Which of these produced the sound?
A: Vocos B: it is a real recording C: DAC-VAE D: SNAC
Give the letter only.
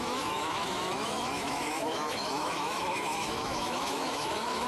C